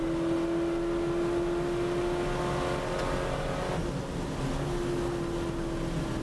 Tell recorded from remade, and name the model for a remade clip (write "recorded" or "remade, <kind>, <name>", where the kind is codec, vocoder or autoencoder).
recorded